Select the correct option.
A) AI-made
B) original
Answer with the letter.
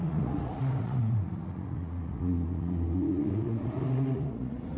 A